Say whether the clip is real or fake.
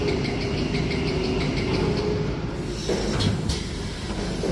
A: real